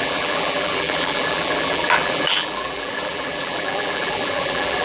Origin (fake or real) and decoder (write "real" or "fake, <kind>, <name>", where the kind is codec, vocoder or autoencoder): fake, vocoder, BigVGAN v2